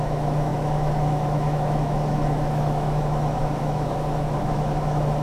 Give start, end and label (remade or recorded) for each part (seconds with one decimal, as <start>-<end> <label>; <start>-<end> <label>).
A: 0.0-5.2 remade